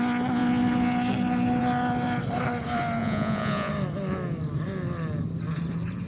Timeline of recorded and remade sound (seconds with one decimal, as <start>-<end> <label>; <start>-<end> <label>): 0.0-3.0 recorded; 3.0-3.7 remade; 3.7-6.1 recorded